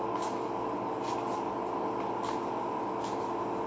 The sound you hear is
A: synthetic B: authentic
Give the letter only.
B